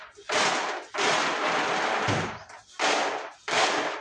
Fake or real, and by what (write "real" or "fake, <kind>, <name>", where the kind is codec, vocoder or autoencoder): real